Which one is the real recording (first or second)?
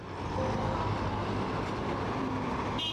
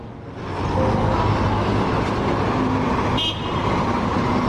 second